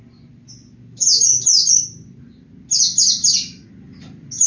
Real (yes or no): yes